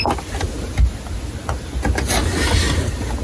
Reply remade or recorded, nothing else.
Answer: recorded